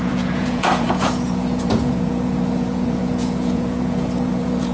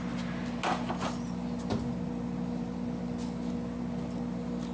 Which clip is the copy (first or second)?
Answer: first